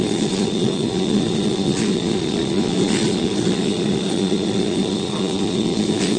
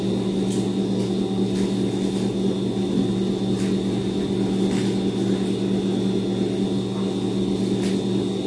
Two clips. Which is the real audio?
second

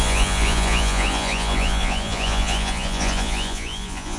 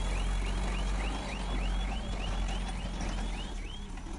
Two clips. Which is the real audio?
second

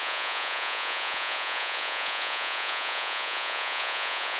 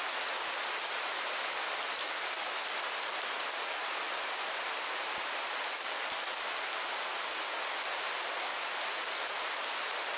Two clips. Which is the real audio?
second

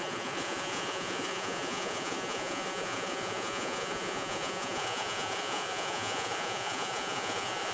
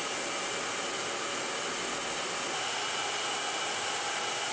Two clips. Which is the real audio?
second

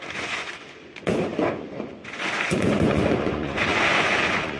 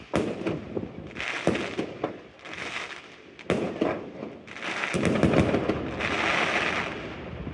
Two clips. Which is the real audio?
second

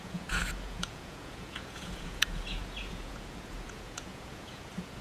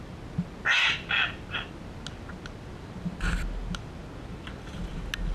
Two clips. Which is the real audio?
second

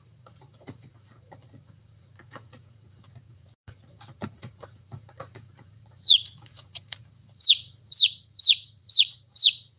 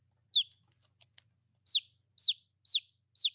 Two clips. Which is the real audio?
second